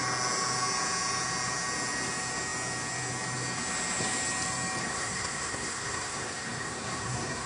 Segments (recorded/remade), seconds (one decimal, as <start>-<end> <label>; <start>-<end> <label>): 0.0-4.8 recorded; 4.8-7.5 remade